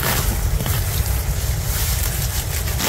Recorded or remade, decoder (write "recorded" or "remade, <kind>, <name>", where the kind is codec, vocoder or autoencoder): recorded